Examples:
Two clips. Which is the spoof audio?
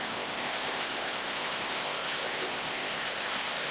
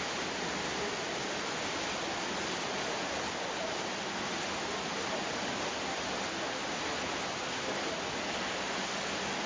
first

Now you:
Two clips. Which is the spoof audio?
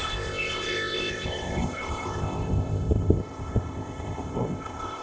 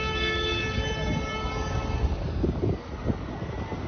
first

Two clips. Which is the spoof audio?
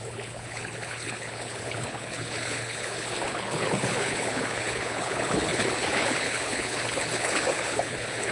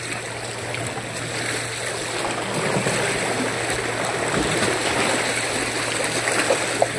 first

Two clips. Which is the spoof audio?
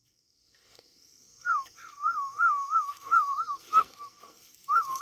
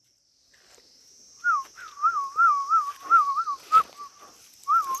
first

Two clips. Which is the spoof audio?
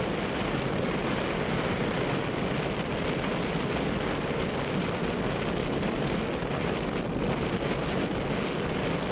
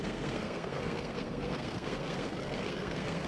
second